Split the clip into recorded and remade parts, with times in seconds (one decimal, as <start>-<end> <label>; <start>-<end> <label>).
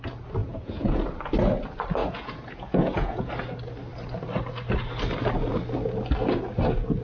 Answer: 0.0-0.4 recorded; 0.4-1.0 remade; 1.0-2.0 recorded; 2.0-3.3 remade; 3.3-7.0 recorded